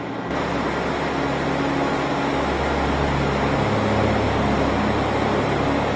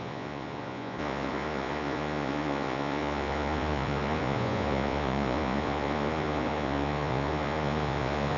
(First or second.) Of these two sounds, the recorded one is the first